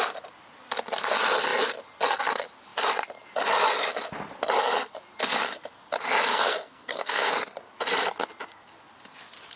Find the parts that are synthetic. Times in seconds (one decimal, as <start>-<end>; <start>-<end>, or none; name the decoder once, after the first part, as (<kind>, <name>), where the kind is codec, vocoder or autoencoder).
6.3-7.3 (codec, SNAC)

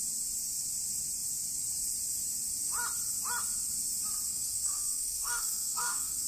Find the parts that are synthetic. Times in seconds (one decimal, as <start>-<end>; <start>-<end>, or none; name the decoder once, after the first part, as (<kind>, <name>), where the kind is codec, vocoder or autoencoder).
4.3-6.3 (codec, SNAC)

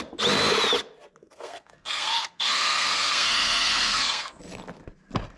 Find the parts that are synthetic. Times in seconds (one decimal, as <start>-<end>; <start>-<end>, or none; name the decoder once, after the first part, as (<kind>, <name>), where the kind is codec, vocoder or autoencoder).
1.2-4.4 (codec, SNAC)

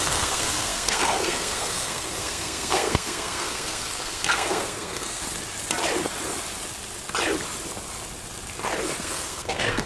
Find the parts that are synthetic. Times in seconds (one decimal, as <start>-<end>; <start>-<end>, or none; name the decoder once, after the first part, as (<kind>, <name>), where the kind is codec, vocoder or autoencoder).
0.0-5.2 (codec, SNAC); 9.0-9.9

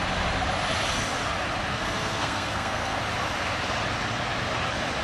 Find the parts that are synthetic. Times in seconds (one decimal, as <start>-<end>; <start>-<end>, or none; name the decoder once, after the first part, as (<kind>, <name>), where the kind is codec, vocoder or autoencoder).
1.7-3.0 (codec, SNAC)

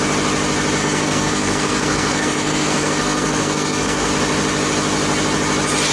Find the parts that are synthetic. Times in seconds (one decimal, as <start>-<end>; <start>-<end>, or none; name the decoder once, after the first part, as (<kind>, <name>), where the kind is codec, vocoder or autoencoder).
0.8-4.1 (codec, SNAC)

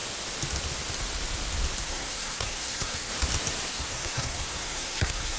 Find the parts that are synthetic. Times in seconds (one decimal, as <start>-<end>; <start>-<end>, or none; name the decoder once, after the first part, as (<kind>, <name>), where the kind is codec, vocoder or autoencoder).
1.8-3.1 (codec, SNAC); 3.7-5.4